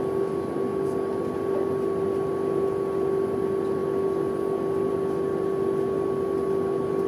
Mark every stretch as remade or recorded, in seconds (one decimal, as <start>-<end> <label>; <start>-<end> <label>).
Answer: 0.0-7.1 recorded